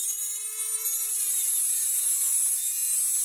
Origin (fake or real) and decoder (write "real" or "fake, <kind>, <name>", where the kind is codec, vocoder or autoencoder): real